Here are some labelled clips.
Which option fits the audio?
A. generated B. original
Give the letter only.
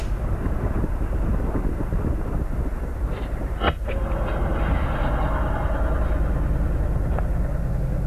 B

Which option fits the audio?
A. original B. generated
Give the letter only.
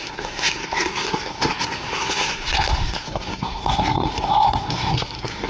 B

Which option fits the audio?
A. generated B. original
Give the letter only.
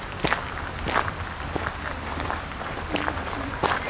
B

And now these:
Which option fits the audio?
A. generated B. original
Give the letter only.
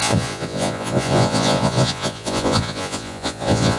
A